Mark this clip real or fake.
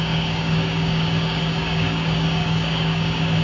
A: fake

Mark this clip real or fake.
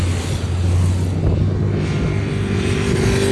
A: real